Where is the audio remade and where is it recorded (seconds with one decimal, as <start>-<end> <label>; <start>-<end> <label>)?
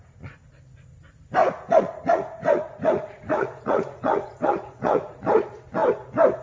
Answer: 0.0-1.4 recorded; 1.4-5.2 remade; 5.2-6.4 recorded